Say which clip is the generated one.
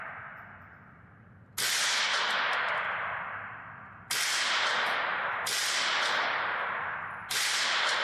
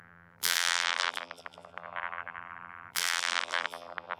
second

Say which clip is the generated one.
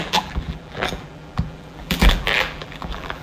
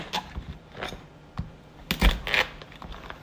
first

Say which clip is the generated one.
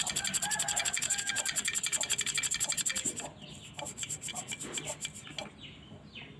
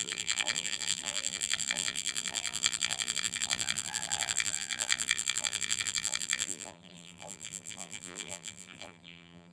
second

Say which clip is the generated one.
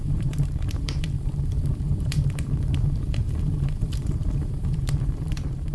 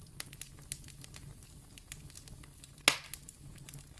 first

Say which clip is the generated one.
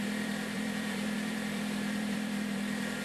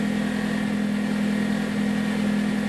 first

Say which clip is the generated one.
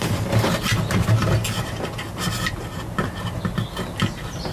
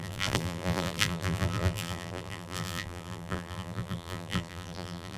second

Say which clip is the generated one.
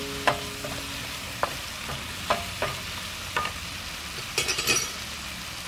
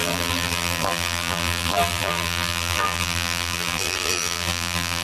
second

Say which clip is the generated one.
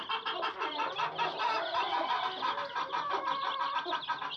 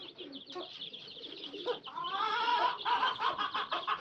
second